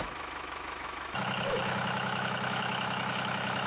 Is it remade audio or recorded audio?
remade